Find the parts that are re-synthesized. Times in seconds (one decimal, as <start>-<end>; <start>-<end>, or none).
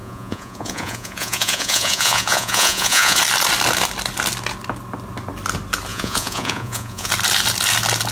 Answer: 0.0-3.2; 5.9-7.1